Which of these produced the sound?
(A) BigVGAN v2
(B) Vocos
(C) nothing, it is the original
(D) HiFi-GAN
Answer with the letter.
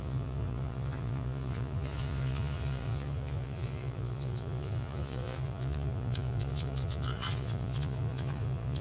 B